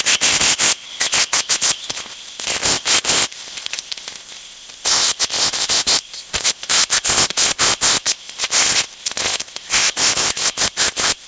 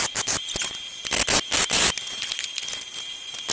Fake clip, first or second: first